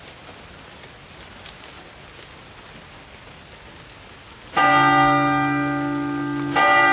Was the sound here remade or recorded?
recorded